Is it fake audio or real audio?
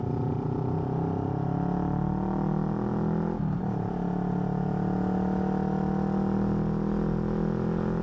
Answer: real